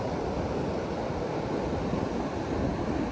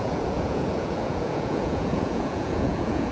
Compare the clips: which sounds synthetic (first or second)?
second